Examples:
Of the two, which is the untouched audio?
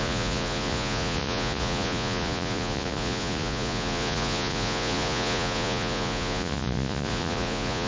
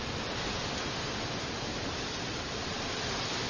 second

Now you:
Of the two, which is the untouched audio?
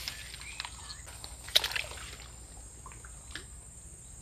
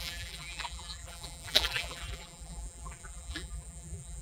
first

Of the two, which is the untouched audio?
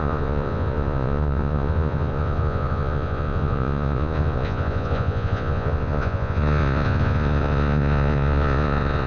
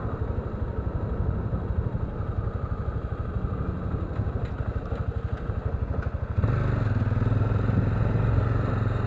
second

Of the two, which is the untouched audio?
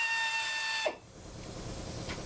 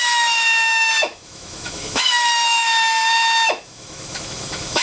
first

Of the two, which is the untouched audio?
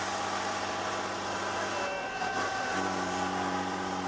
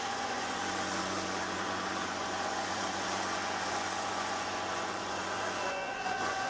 first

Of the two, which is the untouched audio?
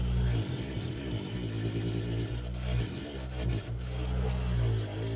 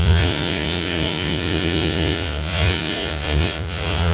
first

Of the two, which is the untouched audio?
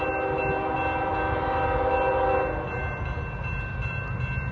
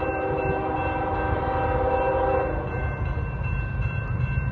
first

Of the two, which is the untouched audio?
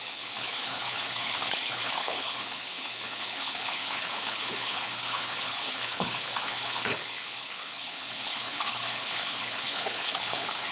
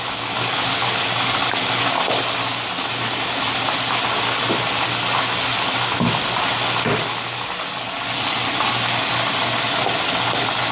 second